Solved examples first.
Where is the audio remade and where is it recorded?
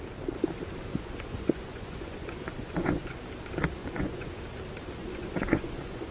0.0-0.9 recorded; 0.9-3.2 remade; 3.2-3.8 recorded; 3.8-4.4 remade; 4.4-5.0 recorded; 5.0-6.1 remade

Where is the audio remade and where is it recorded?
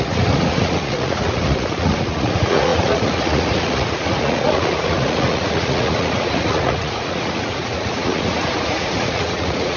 0.0-9.8 remade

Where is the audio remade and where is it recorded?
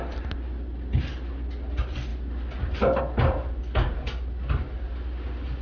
0.0-5.6 recorded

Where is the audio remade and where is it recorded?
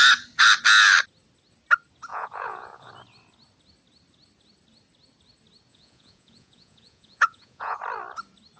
0.0-2.1 recorded; 2.1-2.9 remade; 2.9-5.7 recorded; 5.7-7.8 remade; 7.8-8.6 recorded